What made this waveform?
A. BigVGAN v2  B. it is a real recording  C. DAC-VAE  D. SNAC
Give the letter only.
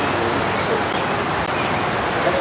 B